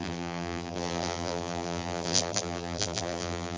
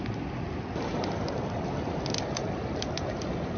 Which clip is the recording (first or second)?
second